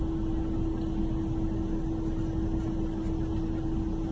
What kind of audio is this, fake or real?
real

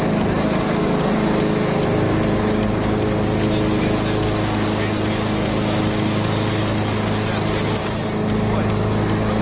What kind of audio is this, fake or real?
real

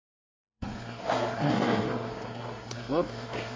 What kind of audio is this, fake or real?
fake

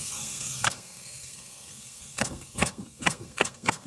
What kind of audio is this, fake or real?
fake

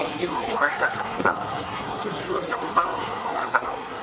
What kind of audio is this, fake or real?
fake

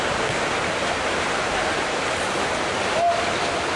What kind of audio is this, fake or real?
real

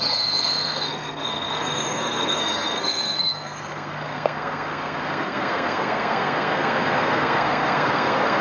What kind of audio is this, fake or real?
fake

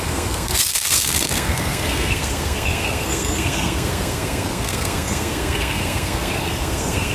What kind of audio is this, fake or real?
fake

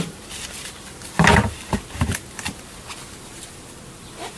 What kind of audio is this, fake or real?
real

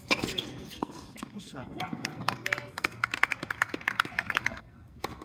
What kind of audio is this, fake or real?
fake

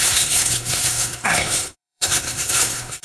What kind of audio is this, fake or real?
fake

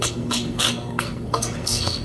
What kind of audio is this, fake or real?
fake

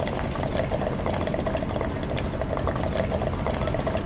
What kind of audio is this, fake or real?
real